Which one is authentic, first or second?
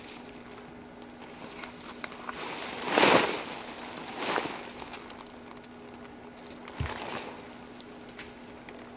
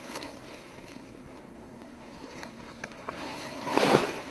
first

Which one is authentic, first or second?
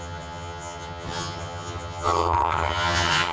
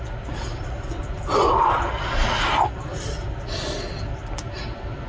second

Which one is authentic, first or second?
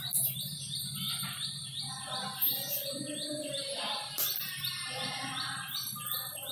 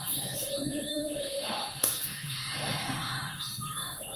first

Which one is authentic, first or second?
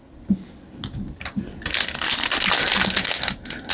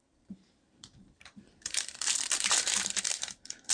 first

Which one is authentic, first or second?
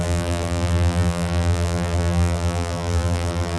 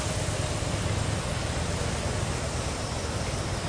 second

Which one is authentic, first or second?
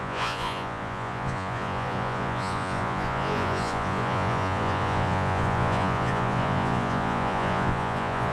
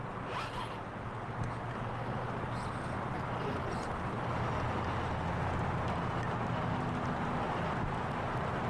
second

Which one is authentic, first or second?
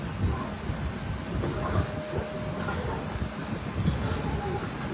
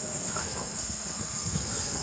first